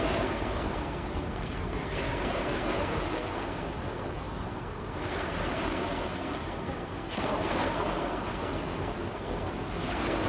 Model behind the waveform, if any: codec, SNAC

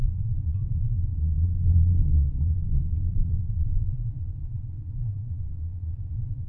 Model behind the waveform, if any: vocoder, Vocos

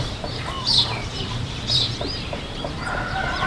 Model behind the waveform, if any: vocoder, BigVGAN v2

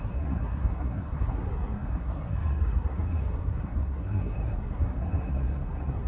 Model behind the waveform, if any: codec, SNAC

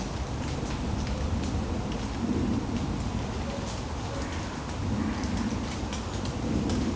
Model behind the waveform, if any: none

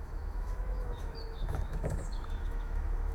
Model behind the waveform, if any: autoencoder, DAC-VAE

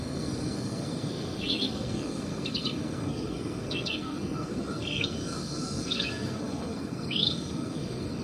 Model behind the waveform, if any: codec, SNAC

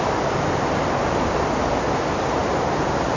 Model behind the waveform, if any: none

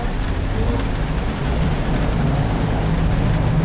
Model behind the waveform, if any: none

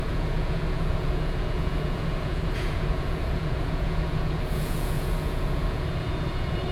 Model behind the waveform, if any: vocoder, Vocos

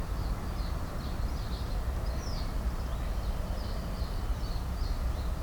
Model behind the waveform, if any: none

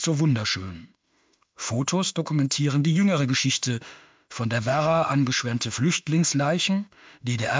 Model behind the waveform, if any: autoencoder, DAC-VAE